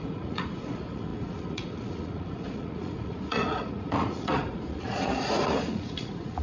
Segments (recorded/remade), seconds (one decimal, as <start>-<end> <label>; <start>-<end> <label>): 0.0-6.4 remade

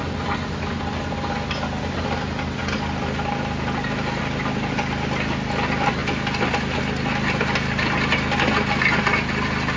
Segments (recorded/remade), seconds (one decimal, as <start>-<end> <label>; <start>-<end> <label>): 0.0-9.8 recorded

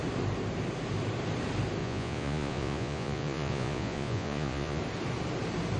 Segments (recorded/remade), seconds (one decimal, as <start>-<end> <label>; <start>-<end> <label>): 0.0-1.8 recorded; 1.8-4.8 remade; 4.8-5.8 recorded

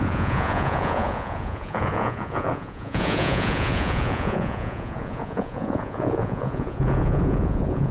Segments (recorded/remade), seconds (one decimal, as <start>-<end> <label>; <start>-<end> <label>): 0.0-7.9 remade

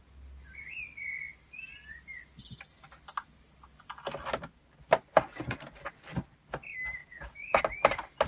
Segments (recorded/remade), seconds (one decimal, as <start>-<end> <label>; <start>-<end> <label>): 0.0-7.0 recorded; 7.0-7.6 remade; 7.6-8.3 recorded